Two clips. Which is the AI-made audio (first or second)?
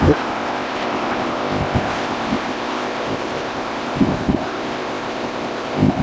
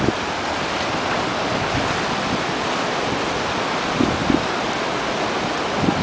first